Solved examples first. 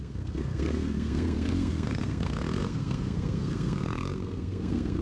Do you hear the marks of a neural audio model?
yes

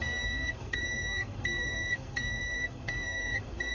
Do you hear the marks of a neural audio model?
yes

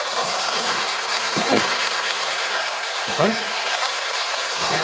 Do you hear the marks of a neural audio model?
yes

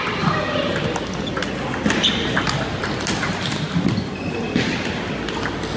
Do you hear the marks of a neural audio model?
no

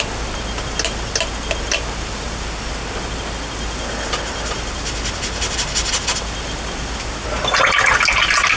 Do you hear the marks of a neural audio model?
no